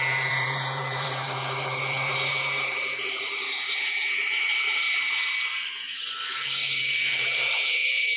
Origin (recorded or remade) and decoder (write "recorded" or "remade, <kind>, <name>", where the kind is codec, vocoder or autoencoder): remade, vocoder, BigVGAN v2